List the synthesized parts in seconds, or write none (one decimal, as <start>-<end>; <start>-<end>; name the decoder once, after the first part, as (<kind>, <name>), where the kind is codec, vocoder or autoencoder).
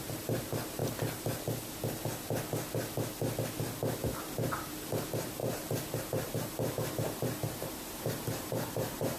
0.0-0.8 (vocoder, BigVGAN v2); 4.2-9.2